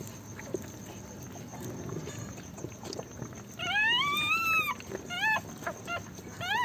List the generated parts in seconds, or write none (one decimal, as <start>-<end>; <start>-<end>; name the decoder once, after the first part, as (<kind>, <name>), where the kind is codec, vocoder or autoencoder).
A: 1.5-3.2 (vocoder, BigVGAN v2)